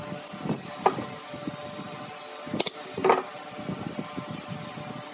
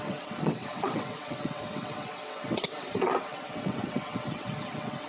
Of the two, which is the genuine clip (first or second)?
first